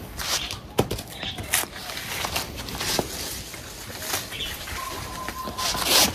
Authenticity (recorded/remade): recorded